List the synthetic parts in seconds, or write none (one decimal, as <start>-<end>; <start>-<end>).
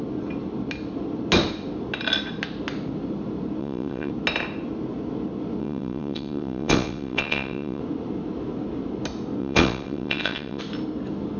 3.6-4.1; 5.6-7.8; 9.4-10.6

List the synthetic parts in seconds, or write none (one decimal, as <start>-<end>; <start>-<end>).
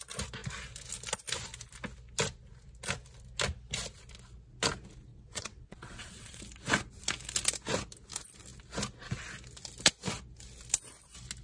5.1-6.4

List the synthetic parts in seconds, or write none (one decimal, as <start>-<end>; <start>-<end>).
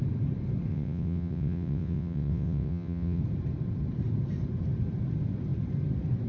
0.7-3.2